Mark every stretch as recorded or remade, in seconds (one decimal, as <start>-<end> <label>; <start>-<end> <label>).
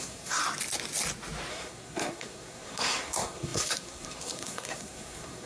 0.0-0.4 remade; 0.4-1.5 recorded; 1.5-5.5 remade